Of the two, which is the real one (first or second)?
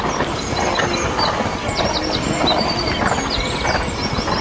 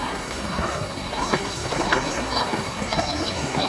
first